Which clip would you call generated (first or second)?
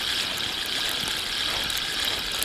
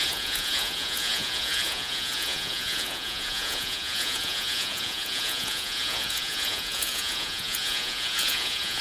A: second